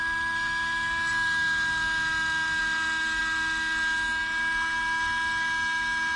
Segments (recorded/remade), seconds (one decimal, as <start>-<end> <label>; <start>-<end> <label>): 0.0-6.2 recorded